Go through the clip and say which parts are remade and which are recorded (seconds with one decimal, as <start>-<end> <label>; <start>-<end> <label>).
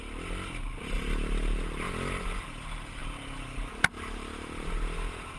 0.0-5.4 recorded